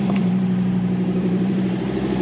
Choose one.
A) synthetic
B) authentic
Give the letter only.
A